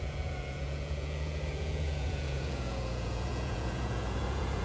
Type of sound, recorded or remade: remade